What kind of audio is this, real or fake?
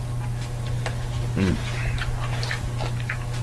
real